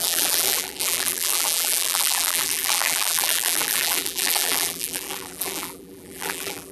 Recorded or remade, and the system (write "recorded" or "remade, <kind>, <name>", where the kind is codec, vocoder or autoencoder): remade, vocoder, BigVGAN v2